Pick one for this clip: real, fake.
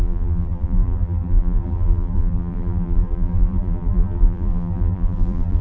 fake